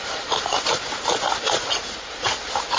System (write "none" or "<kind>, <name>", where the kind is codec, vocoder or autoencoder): none